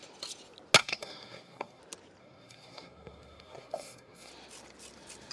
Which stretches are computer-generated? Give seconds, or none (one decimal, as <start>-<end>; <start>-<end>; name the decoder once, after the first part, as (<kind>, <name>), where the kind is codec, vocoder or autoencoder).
0.8-1.8 (codec, SNAC); 2.2-4.3